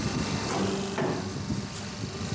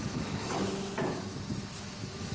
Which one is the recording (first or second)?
first